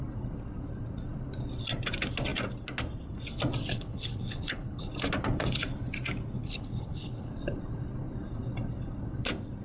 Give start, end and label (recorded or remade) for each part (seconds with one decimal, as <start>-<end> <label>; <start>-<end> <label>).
0.0-3.7 recorded; 3.7-4.9 remade; 4.9-6.4 recorded; 6.4-7.3 remade; 7.3-9.6 recorded